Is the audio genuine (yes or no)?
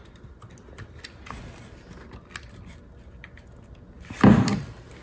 yes